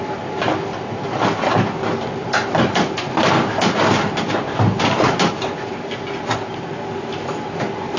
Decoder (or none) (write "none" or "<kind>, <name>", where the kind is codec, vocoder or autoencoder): none